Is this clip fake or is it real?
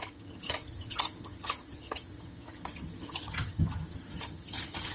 fake